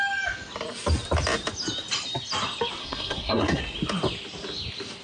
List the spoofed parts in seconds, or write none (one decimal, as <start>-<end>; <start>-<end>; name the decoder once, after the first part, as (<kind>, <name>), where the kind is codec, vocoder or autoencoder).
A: 2.8-3.6 (codec, SNAC)